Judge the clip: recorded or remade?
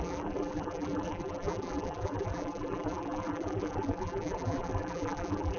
remade